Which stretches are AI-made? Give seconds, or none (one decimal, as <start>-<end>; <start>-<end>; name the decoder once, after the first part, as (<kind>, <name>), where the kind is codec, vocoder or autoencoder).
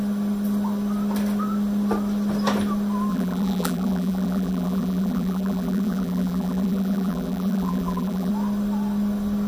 3.1-8.3 (vocoder, BigVGAN v2)